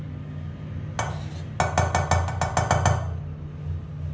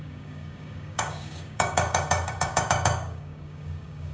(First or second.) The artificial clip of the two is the second